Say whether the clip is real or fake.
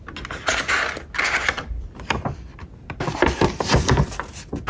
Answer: real